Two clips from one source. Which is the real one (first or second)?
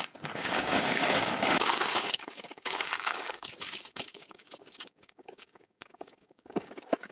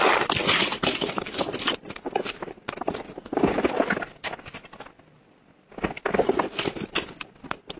second